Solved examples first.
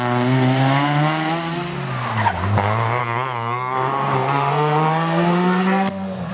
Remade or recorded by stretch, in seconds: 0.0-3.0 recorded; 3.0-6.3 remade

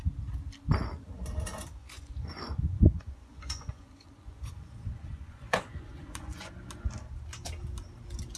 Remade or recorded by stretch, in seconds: 0.0-1.8 recorded; 1.8-6.5 remade; 6.5-8.4 recorded

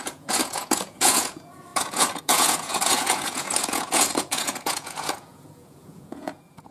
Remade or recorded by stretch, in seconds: 0.0-6.7 remade